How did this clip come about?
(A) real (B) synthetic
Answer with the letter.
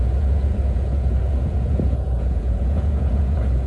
B